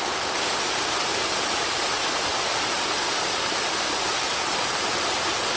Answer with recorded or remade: recorded